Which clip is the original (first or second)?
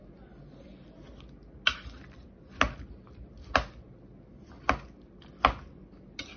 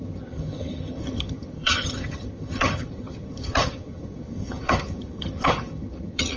first